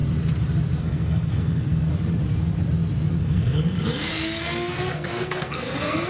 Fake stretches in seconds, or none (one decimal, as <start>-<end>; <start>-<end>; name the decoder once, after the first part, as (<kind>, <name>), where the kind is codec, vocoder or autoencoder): 0.8-1.9 (codec, SNAC); 3.2-6.1